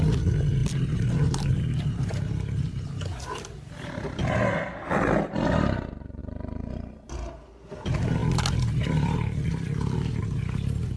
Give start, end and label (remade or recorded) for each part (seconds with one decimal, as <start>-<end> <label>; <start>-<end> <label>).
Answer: 0.0-0.6 recorded; 0.6-1.6 remade; 1.6-11.0 recorded